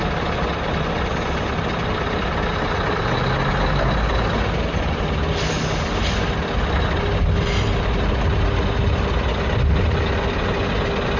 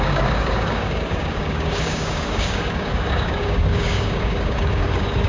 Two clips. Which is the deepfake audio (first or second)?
second